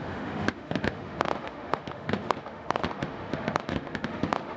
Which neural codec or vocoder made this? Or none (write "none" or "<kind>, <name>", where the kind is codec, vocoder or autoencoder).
autoencoder, DAC-VAE